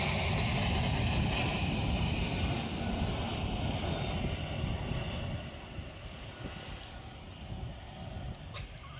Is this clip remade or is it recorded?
recorded